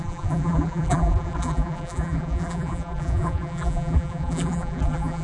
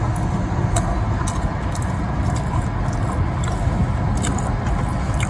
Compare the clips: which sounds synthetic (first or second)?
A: first